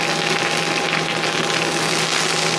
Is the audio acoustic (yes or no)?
yes